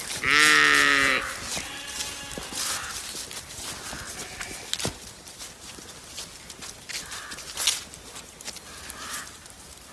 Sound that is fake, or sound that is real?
real